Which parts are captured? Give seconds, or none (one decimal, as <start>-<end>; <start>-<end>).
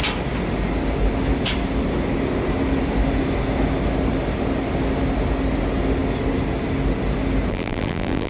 0.0-7.5